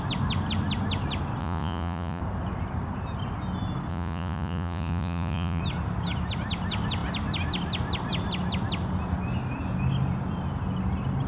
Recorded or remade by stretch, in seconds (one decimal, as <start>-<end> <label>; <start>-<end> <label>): 0.0-1.4 recorded; 1.4-2.2 remade; 2.2-3.9 recorded; 3.9-5.6 remade; 5.6-11.3 recorded